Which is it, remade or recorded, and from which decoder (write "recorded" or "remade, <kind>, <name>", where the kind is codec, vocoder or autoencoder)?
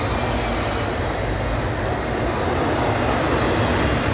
recorded